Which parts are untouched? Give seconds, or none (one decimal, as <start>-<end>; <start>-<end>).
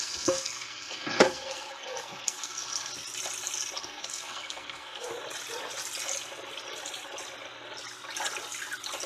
2.9-3.8; 5.1-9.1